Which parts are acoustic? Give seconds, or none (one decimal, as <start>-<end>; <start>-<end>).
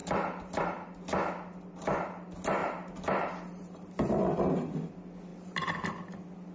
0.6-5.3; 5.9-6.5